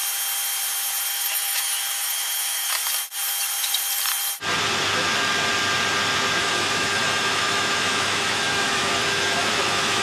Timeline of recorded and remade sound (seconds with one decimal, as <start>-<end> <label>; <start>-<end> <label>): 0.0-1.1 recorded; 1.1-2.8 remade; 2.8-6.4 recorded; 6.4-10.0 remade